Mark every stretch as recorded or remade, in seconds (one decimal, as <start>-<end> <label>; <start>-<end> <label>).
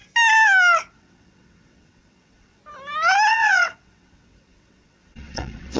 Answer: 0.0-0.9 recorded; 0.9-2.6 remade; 2.6-3.3 recorded; 3.3-5.8 remade